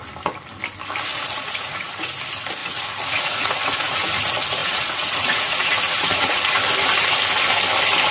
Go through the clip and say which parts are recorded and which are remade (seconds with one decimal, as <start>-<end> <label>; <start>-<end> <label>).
0.0-1.1 recorded; 1.1-2.1 remade; 2.1-2.6 recorded; 2.6-4.1 remade; 4.1-4.6 recorded; 4.6-6.4 remade; 6.4-8.1 recorded